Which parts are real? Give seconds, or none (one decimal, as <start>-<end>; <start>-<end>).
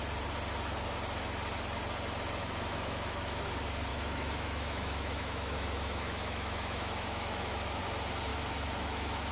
0.0-2.4; 3.4-3.9; 7.8-8.3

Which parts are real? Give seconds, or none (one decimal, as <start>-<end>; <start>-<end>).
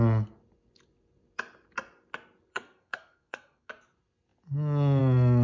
0.0-2.5; 3.7-5.4